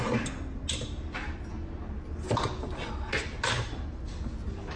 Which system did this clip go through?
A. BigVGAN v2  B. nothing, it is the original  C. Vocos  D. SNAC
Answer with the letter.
B